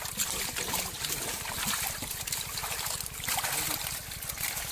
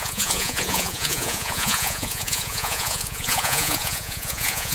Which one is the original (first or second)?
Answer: first